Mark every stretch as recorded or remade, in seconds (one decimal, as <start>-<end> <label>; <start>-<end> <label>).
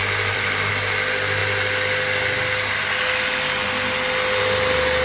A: 0.0-0.7 remade; 0.7-5.0 recorded